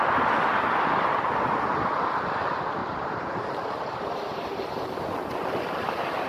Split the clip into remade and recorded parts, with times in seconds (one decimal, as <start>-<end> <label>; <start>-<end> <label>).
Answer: 0.0-2.8 recorded; 2.8-5.0 remade; 5.0-6.3 recorded